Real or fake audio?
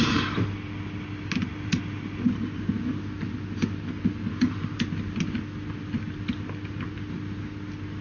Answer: real